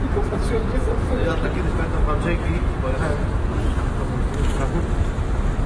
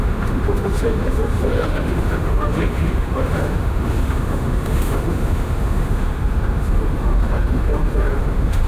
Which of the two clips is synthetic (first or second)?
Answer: second